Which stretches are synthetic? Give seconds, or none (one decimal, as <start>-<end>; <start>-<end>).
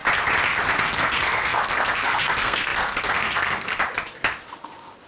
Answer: 0.8-3.8